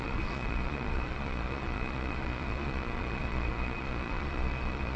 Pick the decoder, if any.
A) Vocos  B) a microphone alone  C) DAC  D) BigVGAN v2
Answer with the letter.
A